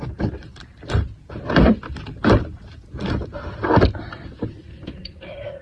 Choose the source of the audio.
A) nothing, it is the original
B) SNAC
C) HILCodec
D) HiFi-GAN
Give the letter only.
A